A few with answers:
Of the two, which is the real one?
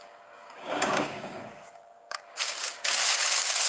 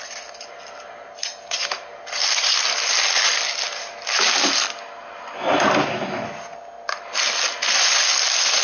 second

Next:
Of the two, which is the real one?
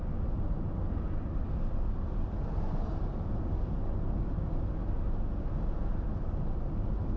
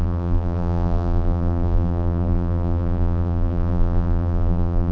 first